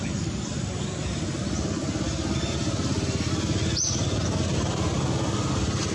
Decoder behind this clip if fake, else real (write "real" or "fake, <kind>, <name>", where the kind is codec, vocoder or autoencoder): real